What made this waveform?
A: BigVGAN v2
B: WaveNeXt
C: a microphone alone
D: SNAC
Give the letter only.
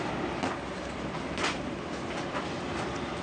C